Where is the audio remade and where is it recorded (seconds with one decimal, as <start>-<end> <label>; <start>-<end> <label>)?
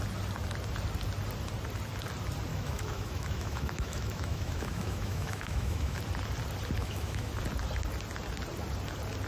0.0-2.5 recorded; 2.5-6.0 remade; 6.0-6.8 recorded; 6.8-7.3 remade; 7.3-9.3 recorded